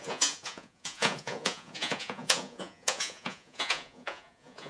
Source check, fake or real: fake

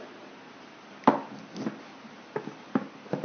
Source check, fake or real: real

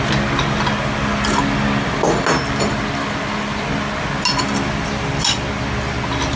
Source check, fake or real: real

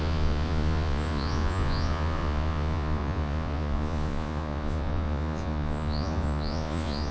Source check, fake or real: fake